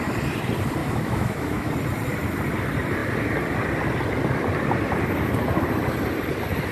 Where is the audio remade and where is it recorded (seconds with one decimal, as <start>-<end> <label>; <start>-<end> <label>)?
0.0-0.8 recorded; 0.8-1.7 remade; 1.7-6.7 recorded